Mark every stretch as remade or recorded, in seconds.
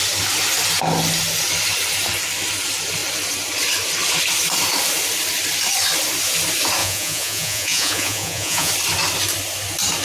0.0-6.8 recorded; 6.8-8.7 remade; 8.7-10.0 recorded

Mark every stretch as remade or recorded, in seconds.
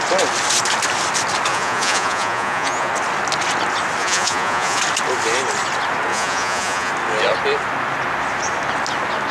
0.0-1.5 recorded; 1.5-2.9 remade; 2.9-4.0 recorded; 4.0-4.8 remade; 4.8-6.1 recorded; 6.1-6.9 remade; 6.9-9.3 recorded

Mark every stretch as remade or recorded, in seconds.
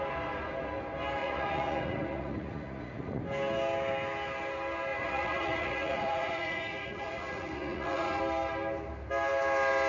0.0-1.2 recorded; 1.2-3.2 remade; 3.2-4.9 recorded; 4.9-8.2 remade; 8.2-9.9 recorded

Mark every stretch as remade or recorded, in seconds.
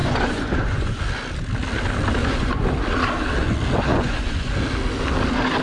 0.0-1.0 remade; 1.0-2.2 recorded; 2.2-2.7 remade; 2.7-3.9 recorded; 3.9-4.5 remade; 4.5-5.6 recorded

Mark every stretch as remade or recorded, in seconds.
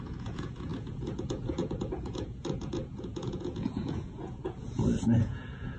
0.0-5.8 remade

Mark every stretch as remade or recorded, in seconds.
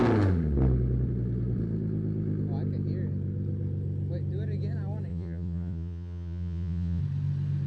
0.0-5.1 recorded; 5.1-7.0 remade; 7.0-7.7 recorded